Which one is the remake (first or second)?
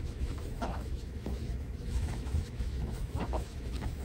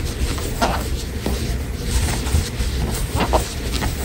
first